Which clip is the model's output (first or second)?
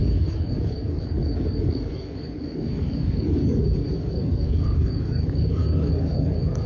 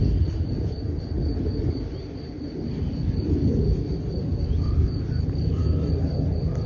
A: first